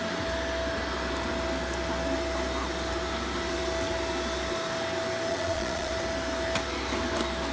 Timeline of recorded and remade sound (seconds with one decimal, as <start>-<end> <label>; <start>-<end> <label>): 0.0-5.3 recorded; 5.3-5.9 remade; 5.9-7.5 recorded